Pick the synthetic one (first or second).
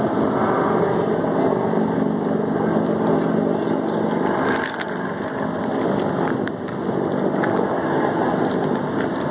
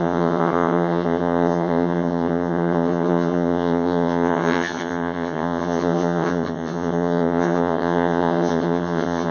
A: second